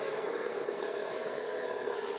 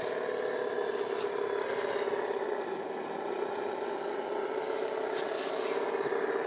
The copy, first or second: first